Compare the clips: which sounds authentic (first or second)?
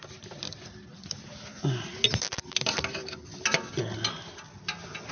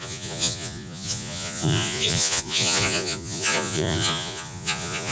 first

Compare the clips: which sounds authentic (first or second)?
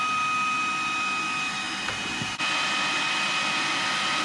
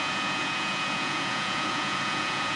first